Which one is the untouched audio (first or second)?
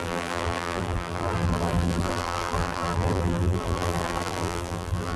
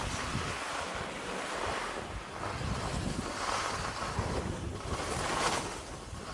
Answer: second